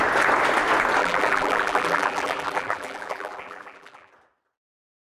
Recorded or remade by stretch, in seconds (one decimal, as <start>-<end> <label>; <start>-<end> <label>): 0.0-1.0 recorded; 1.0-4.1 remade; 4.1-5.1 recorded